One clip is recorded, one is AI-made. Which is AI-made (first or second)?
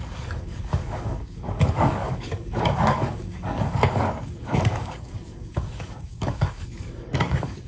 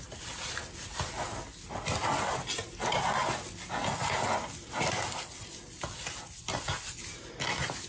first